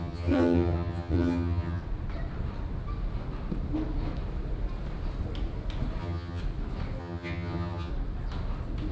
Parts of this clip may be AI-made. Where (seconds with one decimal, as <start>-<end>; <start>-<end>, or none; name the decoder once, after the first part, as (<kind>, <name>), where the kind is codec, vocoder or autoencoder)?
0.0-1.8 (vocoder, HiFi-GAN); 6.0-6.4; 7.0-7.9